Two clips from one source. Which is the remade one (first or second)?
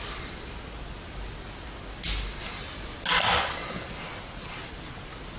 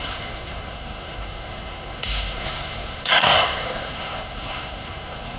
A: second